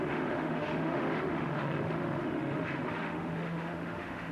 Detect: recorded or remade remade